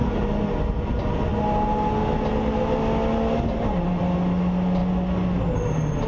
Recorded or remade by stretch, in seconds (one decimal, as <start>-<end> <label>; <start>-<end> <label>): 0.0-6.1 recorded